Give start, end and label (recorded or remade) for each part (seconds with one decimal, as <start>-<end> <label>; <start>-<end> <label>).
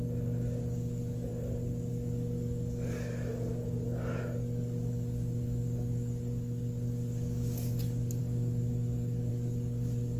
0.0-1.3 remade; 1.3-1.9 recorded; 1.9-10.2 remade